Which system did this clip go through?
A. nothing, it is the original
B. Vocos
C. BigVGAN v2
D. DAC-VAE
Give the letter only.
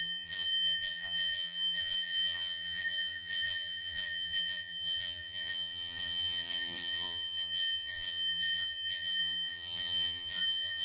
C